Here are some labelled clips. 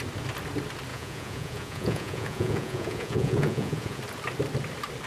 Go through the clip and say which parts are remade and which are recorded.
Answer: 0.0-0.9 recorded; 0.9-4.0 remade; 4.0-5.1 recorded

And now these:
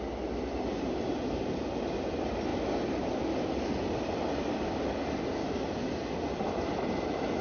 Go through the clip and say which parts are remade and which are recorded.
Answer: 0.0-7.4 recorded

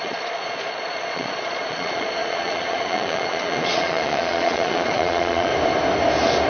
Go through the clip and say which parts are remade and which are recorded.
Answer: 0.0-5.5 remade; 5.5-6.5 recorded

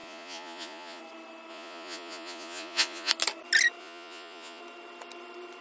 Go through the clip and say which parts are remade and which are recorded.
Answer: 0.0-1.0 remade; 1.0-1.5 recorded; 1.5-3.1 remade; 3.1-3.8 recorded; 3.8-4.6 remade; 4.6-5.6 recorded